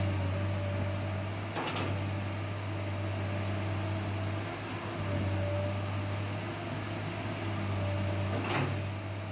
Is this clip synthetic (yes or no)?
no